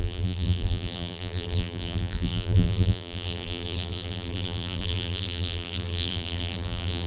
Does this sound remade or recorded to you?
remade